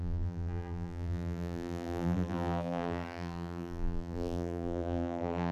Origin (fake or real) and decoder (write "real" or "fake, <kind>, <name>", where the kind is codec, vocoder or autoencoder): fake, vocoder, BigVGAN v2